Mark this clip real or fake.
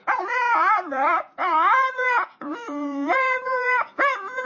fake